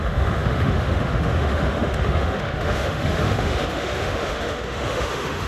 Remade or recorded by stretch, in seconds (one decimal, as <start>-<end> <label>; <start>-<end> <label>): 0.0-5.5 remade